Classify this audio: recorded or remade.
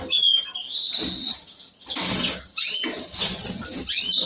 recorded